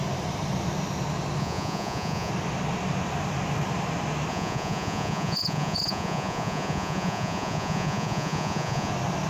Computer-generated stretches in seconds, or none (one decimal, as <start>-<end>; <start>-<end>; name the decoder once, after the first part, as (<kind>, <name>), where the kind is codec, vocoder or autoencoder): 1.4-2.3 (vocoder, Vocos); 4.3-8.9